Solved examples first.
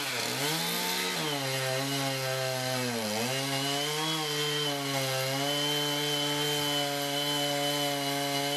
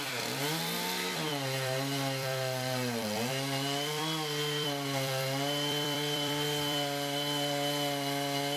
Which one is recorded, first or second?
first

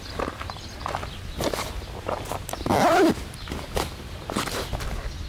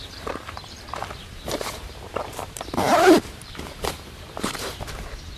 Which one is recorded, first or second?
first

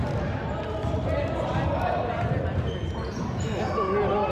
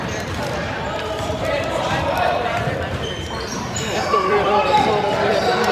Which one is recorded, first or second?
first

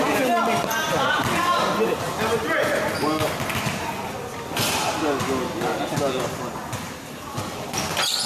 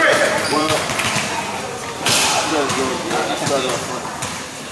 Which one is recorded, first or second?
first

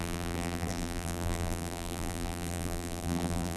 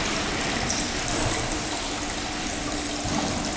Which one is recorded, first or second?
second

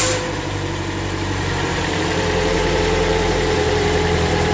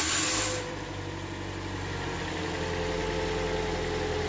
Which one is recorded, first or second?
second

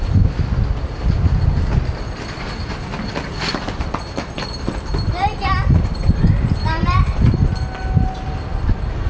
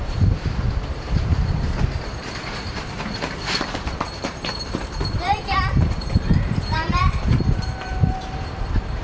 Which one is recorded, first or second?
first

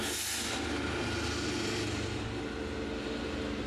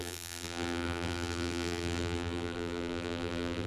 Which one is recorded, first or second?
first